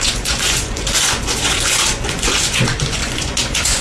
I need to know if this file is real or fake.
fake